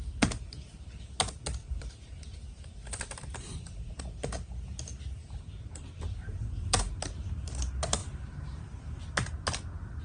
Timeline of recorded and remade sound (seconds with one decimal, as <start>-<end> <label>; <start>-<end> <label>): 0.0-1.6 recorded; 1.6-4.0 remade; 4.0-5.2 recorded; 5.2-7.0 remade; 7.0-8.0 recorded; 8.0-8.6 remade; 8.6-10.0 recorded